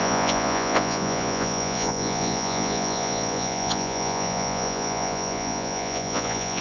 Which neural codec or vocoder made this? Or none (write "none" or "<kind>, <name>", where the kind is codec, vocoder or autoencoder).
vocoder, Vocos